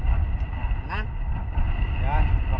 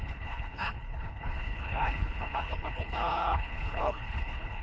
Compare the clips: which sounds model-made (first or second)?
second